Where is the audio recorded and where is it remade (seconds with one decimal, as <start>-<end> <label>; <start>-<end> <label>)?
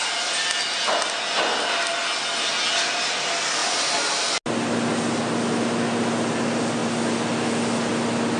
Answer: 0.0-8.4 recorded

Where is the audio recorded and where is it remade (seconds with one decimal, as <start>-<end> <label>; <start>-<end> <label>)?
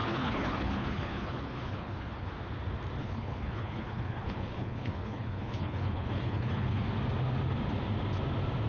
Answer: 0.0-2.3 remade; 2.3-3.0 recorded; 3.0-6.9 remade; 6.9-8.7 recorded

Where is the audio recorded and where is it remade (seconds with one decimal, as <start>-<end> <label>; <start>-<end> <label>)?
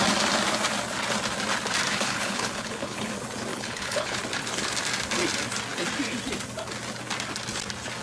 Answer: 0.0-1.9 recorded; 1.9-3.1 remade; 3.1-3.5 recorded; 3.5-4.2 remade; 4.2-8.0 recorded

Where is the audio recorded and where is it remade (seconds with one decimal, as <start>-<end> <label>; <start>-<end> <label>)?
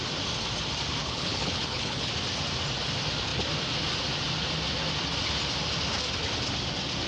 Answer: 0.0-1.0 recorded; 1.0-2.1 remade; 2.1-7.1 recorded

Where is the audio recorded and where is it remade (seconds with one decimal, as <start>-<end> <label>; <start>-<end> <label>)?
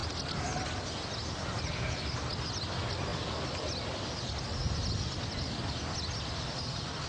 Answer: 0.0-7.1 recorded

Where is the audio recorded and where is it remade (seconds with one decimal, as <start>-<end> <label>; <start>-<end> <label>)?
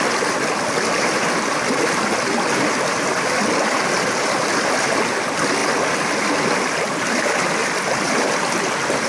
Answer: 0.0-9.1 recorded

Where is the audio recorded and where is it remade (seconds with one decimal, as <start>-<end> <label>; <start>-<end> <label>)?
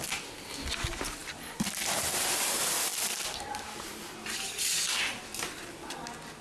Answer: 0.0-6.4 recorded